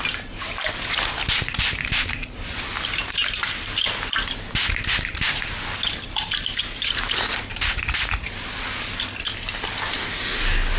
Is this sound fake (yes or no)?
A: no